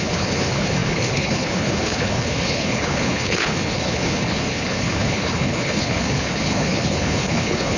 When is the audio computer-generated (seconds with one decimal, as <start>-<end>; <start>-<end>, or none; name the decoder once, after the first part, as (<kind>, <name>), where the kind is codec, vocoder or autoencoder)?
0.0-7.8 (codec, HILCodec)